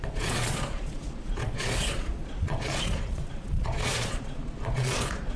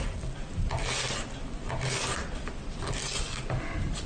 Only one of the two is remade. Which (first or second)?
first